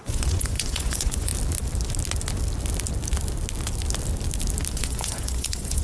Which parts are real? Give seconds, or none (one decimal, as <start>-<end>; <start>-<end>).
1.3-4.7